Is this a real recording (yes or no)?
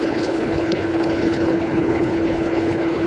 no